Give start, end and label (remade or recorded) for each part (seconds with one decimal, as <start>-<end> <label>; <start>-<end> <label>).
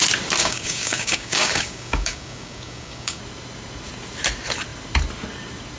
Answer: 0.0-0.4 recorded; 0.4-3.2 remade; 3.2-5.8 recorded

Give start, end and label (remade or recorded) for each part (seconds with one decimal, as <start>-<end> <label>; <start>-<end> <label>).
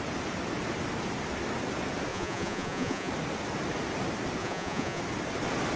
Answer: 0.0-2.1 recorded; 2.1-3.1 remade; 3.1-4.4 recorded; 4.4-5.0 remade; 5.0-5.8 recorded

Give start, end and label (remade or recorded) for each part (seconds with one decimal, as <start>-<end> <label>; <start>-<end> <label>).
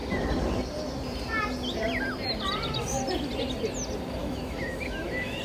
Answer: 0.0-4.2 recorded; 4.2-5.4 remade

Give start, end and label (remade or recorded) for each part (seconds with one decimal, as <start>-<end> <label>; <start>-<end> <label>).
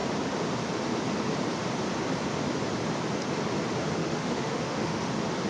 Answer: 0.0-4.0 recorded; 4.0-5.1 remade; 5.1-5.5 recorded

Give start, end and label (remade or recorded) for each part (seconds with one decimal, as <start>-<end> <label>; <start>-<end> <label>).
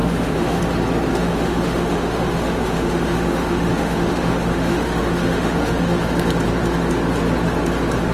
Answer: 0.0-0.6 remade; 0.6-1.1 recorded; 1.1-6.0 remade; 6.0-8.1 recorded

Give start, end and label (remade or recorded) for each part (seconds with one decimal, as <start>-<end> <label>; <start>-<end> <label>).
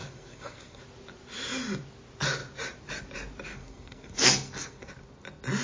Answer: 0.0-0.8 remade; 0.8-3.5 recorded; 3.5-4.9 remade; 4.9-5.6 recorded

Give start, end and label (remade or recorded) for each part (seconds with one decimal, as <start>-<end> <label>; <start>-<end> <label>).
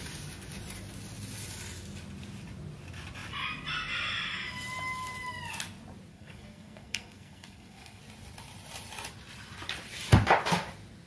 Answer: 0.0-6.1 recorded; 6.1-8.0 remade; 8.0-11.1 recorded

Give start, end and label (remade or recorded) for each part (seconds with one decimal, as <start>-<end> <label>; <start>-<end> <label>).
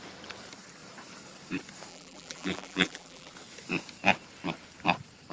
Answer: 0.0-1.9 recorded; 1.9-3.3 remade; 3.3-5.3 recorded